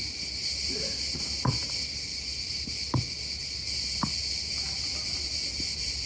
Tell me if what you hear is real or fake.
real